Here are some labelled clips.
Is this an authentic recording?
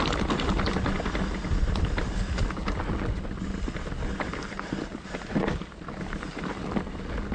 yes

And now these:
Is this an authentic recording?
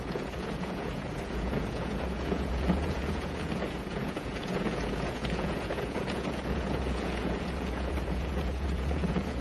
no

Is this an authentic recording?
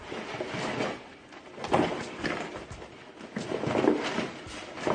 yes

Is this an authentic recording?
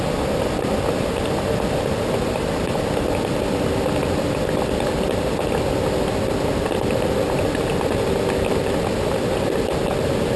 yes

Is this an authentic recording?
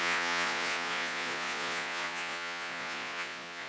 no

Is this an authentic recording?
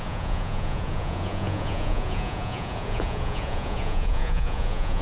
no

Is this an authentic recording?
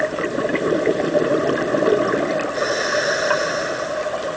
yes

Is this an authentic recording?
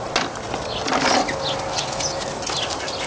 yes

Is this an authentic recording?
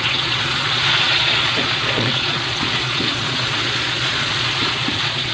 no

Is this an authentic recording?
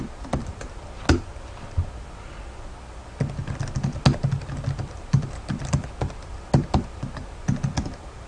yes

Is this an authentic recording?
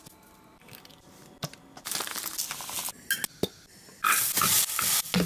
yes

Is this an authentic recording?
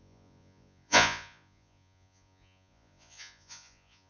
no